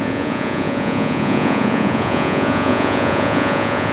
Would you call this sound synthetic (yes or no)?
yes